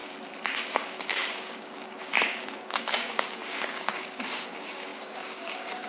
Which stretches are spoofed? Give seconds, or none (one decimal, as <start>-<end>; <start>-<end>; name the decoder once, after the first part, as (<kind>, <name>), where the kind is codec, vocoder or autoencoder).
0.6-5.9 (codec, DAC)